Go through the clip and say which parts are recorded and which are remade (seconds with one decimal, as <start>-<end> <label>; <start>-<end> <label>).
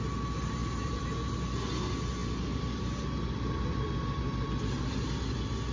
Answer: 0.0-0.6 recorded; 0.6-1.3 remade; 1.3-5.7 recorded